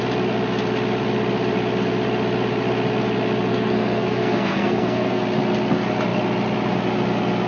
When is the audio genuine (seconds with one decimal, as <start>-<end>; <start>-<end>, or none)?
0.0-3.5; 5.2-7.5